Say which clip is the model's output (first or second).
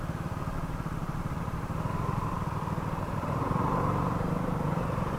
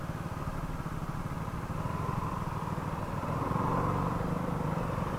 first